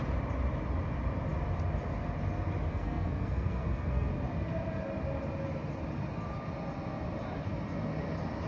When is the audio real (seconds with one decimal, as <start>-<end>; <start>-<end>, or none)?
0.0-2.7; 4.1-8.5